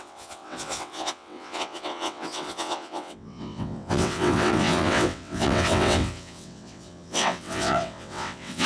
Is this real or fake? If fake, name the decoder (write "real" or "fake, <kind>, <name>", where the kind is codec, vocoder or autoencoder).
fake, vocoder, WaveNeXt